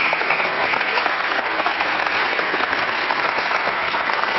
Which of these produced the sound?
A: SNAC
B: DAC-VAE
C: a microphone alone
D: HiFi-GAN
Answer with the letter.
A